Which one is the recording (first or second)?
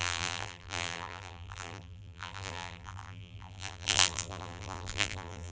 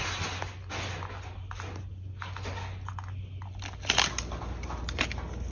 second